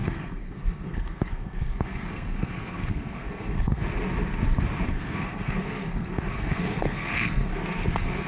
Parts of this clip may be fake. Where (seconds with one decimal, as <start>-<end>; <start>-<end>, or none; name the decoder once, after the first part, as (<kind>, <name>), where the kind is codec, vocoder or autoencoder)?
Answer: 0.0-3.8 (codec, SNAC); 4.9-8.3